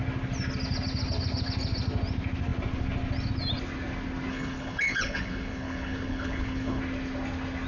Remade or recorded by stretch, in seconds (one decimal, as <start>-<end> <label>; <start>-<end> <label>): 0.0-4.3 recorded; 4.3-6.8 remade; 6.8-7.7 recorded